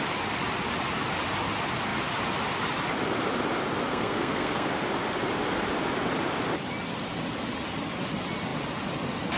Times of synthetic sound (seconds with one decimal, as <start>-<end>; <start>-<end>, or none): 3.9-4.7